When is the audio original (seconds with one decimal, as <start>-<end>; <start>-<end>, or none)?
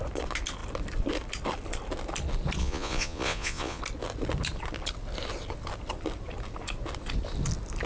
0.0-2.6; 3.8-7.9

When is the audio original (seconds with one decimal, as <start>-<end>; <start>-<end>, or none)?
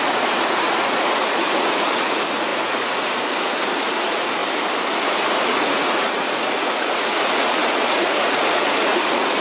4.4-4.9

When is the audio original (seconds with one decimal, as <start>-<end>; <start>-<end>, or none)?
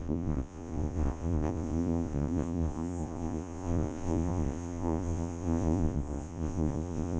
none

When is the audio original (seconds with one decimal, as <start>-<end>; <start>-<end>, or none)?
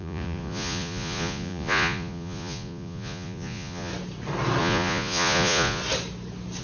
3.9-4.6; 5.8-6.6